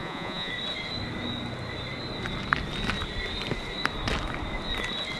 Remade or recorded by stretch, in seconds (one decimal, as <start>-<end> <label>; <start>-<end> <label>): 0.0-0.5 remade; 0.5-5.2 recorded